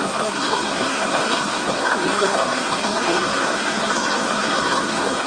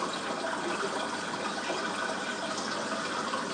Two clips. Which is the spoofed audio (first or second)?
first